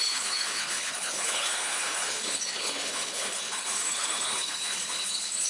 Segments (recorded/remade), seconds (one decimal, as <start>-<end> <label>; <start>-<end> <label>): 0.0-5.5 remade